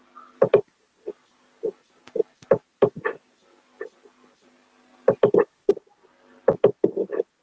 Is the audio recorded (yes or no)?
yes